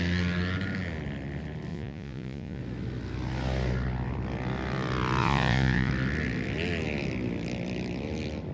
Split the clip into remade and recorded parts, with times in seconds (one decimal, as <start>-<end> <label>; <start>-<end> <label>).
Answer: 0.0-1.7 recorded; 1.7-2.6 remade; 2.6-5.2 recorded; 5.2-5.9 remade; 5.9-8.5 recorded